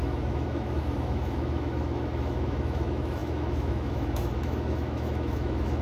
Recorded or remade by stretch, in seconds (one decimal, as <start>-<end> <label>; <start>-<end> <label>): 0.0-5.8 remade